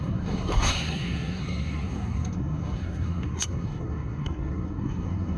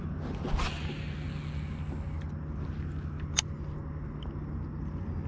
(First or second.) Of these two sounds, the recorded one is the second